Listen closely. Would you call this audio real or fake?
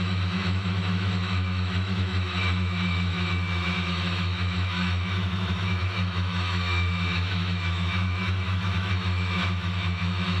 fake